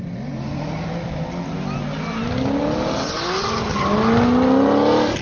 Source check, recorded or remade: recorded